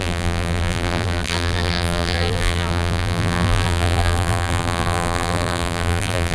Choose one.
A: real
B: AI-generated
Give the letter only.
B